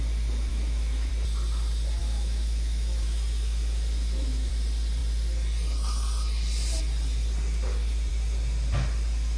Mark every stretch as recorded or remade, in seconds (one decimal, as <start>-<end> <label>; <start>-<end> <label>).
0.0-0.5 recorded; 0.5-1.1 remade; 1.1-2.0 recorded; 2.0-4.5 remade; 4.5-9.4 recorded

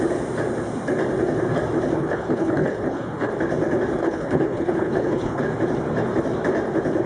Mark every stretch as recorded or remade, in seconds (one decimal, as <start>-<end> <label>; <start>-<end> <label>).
0.0-2.0 recorded; 2.0-3.3 remade; 3.3-4.0 recorded; 4.0-5.4 remade; 5.4-7.1 recorded

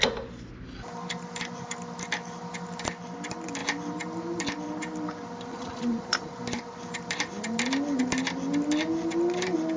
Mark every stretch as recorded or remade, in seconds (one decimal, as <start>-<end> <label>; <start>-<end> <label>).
0.0-5.5 recorded; 5.5-6.3 remade; 6.3-9.8 recorded

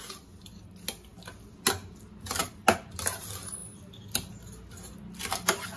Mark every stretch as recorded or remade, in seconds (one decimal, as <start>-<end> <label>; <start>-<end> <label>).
0.0-3.6 recorded; 3.6-4.3 remade; 4.3-5.8 recorded

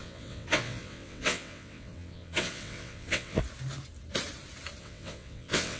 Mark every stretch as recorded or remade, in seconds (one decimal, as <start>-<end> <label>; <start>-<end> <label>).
0.0-3.4 remade; 3.4-4.8 recorded; 4.8-5.8 remade

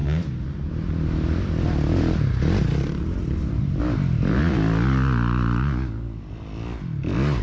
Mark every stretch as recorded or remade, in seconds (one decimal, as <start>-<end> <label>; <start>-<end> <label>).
0.0-7.4 recorded

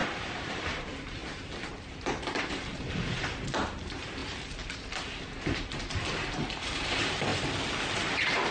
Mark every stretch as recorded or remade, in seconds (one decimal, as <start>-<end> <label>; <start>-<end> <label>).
0.0-1.2 remade; 1.2-1.8 recorded; 1.8-7.3 remade; 7.3-8.5 recorded

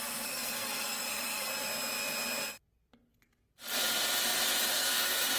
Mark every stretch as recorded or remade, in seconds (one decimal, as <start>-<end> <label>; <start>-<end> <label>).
0.0-1.5 remade; 1.5-4.7 recorded; 4.7-5.4 remade